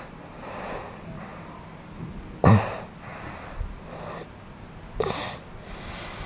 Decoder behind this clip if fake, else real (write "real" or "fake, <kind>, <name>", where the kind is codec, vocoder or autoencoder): real